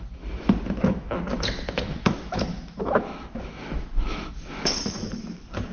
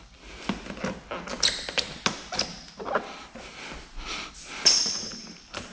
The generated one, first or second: first